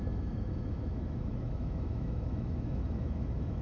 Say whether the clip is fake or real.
fake